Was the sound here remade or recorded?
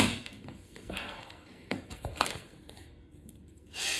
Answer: remade